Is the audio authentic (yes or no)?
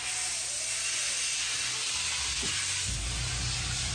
yes